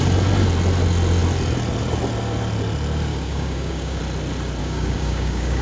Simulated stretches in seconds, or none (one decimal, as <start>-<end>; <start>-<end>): 3.1-4.0; 4.6-5.6